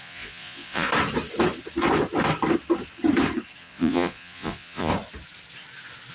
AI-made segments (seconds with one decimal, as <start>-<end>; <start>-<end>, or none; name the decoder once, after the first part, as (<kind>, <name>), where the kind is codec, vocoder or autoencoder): 0.0-0.9 (vocoder, Vocos); 3.6-4.9